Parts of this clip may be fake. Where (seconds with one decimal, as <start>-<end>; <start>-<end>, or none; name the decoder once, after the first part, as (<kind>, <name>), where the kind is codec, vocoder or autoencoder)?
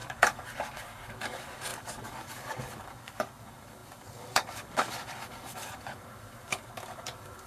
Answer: 0.0-7.5 (codec, DAC)